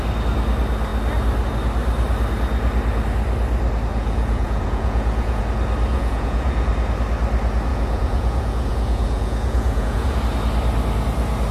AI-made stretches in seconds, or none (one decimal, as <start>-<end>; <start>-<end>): 3.9-5.4; 5.9-6.7; 7.7-10.2